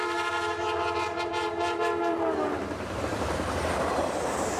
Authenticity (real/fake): fake